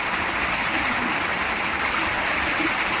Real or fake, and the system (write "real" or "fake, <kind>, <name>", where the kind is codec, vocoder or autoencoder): real